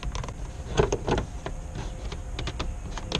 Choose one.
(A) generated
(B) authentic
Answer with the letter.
B